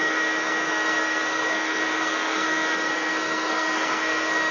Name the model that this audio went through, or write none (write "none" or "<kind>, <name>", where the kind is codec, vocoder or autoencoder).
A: codec, SNAC